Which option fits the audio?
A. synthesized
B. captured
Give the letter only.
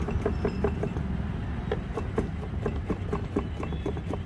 B